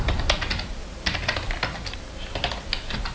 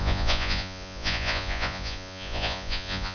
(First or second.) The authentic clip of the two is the first